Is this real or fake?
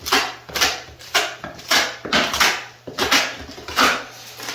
fake